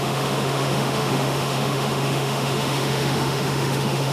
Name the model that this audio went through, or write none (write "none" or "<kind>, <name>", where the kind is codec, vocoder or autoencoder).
autoencoder, DAC-VAE